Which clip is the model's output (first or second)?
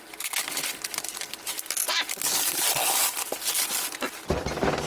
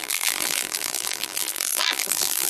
second